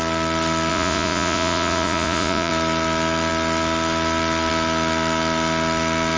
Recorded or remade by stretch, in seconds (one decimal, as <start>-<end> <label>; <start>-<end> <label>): 0.0-0.7 recorded; 0.7-2.5 remade; 2.5-6.2 recorded